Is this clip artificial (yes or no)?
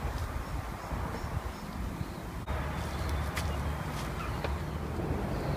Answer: no